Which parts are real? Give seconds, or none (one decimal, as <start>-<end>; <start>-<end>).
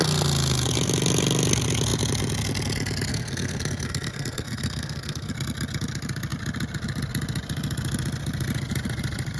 0.0-3.1; 5.3-9.4